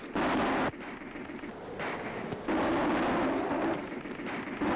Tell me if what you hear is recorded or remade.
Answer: recorded